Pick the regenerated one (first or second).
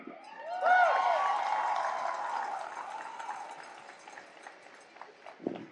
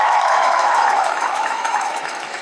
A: second